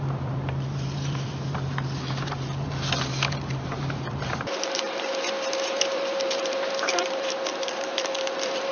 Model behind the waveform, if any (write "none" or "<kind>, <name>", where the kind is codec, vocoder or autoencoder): vocoder, BigVGAN v2